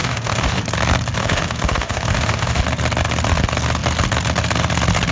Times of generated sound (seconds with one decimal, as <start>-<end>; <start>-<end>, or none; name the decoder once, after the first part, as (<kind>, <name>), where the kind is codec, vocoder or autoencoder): 0.0-0.6 (autoencoder, DAC-VAE); 1.2-2.6